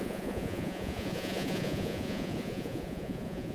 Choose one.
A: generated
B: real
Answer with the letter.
A